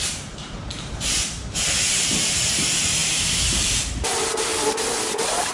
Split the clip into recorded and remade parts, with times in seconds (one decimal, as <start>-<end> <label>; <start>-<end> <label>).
0.0-4.5 remade; 4.5-5.5 recorded